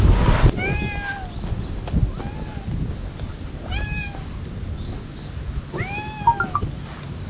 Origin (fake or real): real